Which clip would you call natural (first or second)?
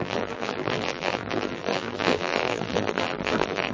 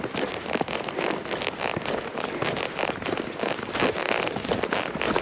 second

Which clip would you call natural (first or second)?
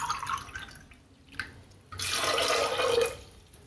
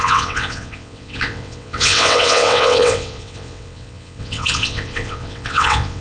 first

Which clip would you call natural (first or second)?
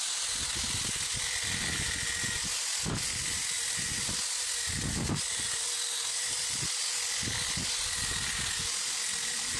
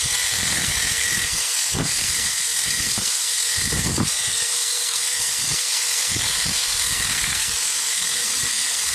first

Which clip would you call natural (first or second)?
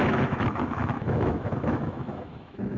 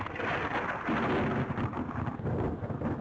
second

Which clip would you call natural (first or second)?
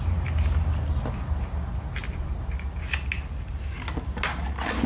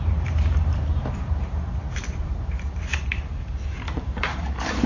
first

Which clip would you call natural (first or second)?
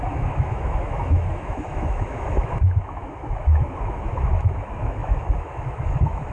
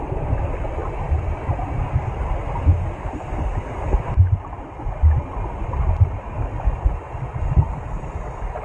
second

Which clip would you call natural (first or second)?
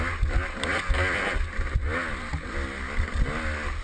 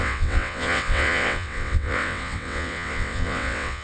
first